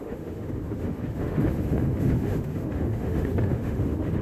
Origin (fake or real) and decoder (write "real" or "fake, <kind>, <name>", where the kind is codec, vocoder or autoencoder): fake, autoencoder, DAC-VAE